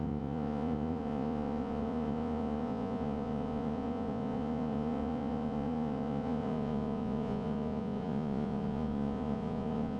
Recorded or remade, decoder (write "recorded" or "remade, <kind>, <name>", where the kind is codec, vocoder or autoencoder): remade, vocoder, Vocos